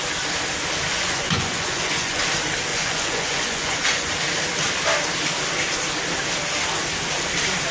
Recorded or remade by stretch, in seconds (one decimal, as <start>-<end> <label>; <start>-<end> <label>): 0.0-0.9 recorded; 0.9-2.2 remade; 2.2-2.7 recorded; 2.7-4.1 remade; 4.1-7.7 recorded